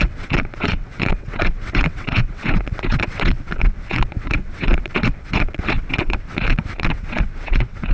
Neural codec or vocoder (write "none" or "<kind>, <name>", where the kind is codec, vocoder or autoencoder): vocoder, WaveNeXt